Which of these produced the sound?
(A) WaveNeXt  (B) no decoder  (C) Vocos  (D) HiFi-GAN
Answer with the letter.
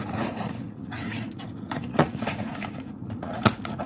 C